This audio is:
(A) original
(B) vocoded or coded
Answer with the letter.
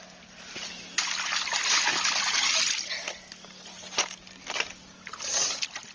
A